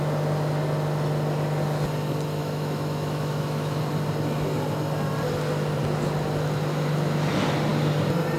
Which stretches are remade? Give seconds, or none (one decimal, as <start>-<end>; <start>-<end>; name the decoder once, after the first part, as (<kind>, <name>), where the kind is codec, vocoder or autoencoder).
2.4-3.8 (autoencoder, DAC-VAE)